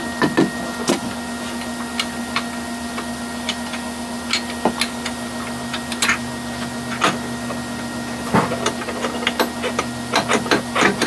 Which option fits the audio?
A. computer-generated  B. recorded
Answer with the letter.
B